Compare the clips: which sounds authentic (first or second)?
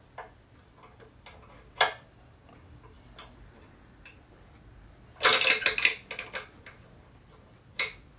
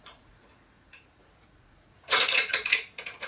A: first